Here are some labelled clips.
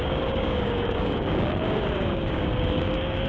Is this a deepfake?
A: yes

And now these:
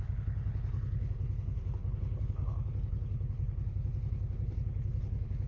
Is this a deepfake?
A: yes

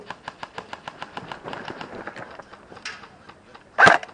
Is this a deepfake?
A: no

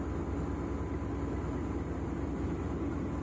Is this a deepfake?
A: no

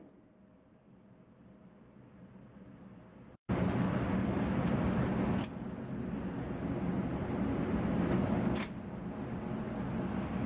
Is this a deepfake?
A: no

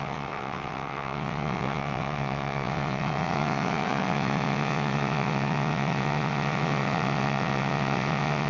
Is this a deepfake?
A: yes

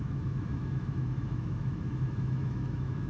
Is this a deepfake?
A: yes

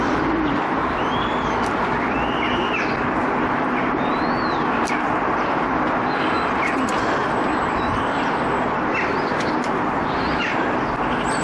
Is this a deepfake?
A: no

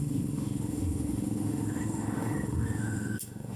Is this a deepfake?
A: yes